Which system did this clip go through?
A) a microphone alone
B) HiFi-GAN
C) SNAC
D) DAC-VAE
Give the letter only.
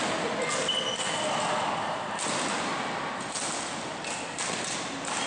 A